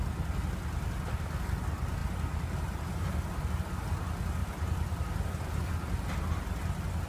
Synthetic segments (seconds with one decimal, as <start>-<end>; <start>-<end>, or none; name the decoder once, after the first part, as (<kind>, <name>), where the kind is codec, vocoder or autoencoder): none

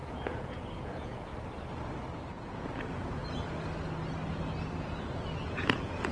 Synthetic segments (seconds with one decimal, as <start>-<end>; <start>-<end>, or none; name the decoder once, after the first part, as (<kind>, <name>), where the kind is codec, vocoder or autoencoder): 0.0-1.3 (vocoder, Vocos); 2.3-3.2; 5.4-6.1

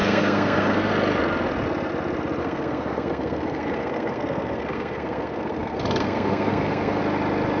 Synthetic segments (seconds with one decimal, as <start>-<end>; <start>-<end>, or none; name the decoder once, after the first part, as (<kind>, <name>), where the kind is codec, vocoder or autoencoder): 0.0-0.9 (codec, SNAC); 2.4-7.0

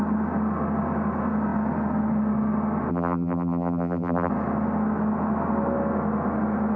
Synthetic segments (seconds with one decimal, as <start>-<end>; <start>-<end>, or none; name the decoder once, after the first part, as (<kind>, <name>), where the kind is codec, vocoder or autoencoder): 2.9-4.3 (vocoder, BigVGAN v2)

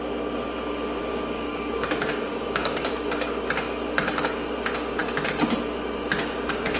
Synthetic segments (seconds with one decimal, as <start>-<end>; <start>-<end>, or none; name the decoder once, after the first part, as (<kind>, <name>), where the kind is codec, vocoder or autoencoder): 1.0-2.9 (codec, DAC)